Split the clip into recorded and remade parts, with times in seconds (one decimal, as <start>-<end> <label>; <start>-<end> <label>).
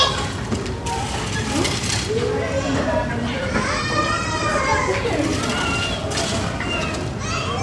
0.0-4.7 recorded; 4.7-5.4 remade; 5.4-7.6 recorded